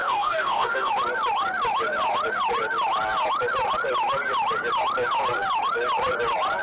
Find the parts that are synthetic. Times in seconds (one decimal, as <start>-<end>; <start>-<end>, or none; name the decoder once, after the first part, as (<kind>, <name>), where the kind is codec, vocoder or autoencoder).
0.0-0.9 (codec, DAC)